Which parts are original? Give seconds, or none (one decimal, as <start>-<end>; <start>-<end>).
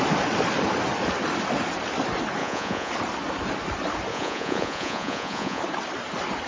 0.0-2.4; 2.9-4.1; 5.6-6.5